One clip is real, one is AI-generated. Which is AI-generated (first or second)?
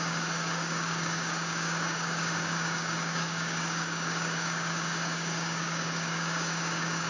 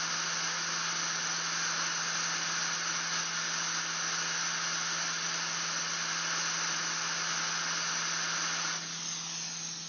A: first